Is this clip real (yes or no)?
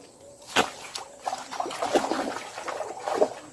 yes